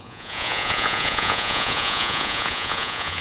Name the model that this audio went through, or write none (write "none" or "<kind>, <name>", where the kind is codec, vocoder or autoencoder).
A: vocoder, Vocos